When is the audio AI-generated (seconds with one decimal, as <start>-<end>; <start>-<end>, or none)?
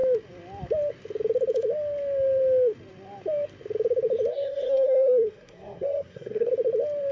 4.3-6.5